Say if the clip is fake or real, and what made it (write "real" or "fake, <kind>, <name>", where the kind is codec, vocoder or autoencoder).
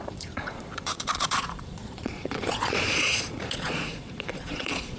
fake, vocoder, Vocos